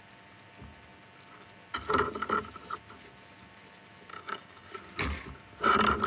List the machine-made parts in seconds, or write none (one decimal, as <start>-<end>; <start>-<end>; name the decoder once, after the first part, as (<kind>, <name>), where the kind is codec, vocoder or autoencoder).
4.1-4.7 (codec, DAC)